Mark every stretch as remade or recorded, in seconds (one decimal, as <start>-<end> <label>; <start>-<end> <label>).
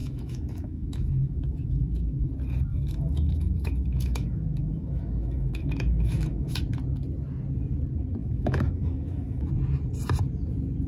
0.0-2.3 remade; 2.3-2.7 recorded; 2.7-6.6 remade; 6.6-8.2 recorded; 8.2-9.5 remade; 9.5-10.9 recorded